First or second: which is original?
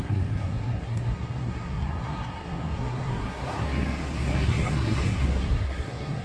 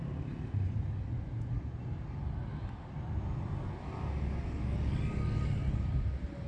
second